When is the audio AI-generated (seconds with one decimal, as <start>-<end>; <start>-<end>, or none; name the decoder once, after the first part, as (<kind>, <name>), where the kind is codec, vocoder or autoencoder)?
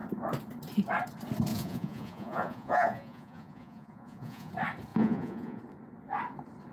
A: 1.5-4.5 (vocoder, Vocos); 4.9-5.6